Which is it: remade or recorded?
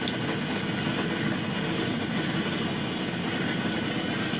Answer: recorded